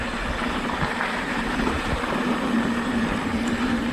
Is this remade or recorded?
remade